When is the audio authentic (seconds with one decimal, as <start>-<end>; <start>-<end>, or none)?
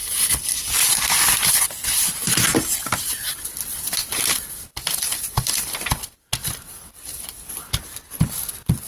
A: 0.0-8.9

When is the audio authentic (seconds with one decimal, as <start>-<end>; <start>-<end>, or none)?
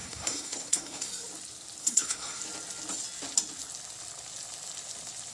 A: 1.1-1.8; 2.4-5.3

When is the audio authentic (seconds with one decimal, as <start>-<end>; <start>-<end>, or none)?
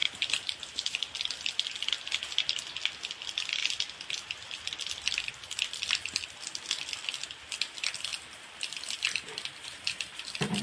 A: 1.2-8.1